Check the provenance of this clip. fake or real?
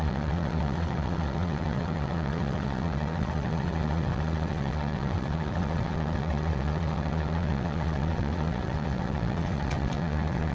fake